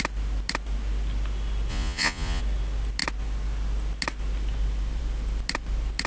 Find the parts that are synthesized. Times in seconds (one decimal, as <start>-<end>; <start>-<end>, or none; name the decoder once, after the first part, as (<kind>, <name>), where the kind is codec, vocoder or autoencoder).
1.7-2.4 (vocoder, Vocos)